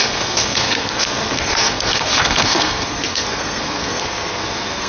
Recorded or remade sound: remade